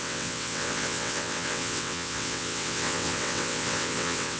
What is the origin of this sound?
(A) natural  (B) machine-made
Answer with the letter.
B